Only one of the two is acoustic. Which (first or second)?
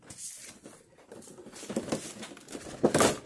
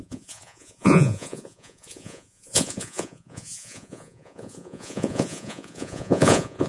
first